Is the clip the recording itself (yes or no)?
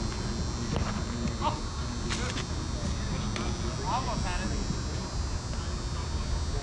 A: yes